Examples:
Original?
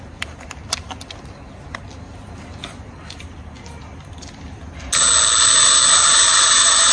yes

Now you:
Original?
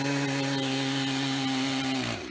yes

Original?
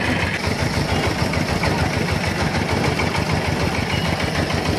yes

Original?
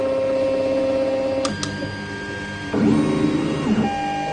yes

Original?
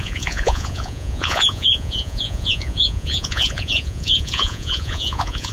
no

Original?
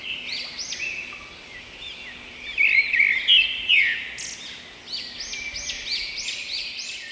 yes